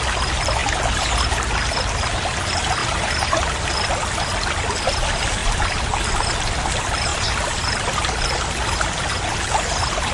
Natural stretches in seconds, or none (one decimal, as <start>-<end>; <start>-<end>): 0.0-2.8; 3.4-10.1